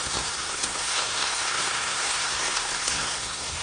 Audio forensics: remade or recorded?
remade